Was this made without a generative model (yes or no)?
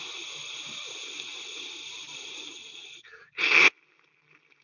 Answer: yes